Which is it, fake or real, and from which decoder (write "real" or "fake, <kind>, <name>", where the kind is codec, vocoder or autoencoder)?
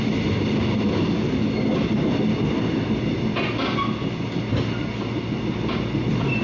real